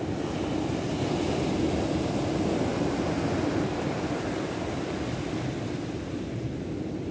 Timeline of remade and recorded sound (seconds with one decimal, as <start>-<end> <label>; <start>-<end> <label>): 0.0-2.7 recorded; 2.7-4.1 remade; 4.1-7.1 recorded